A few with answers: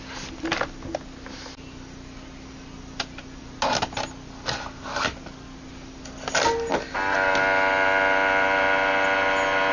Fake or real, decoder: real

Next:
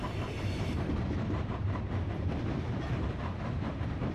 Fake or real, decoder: fake, vocoder, BigVGAN v2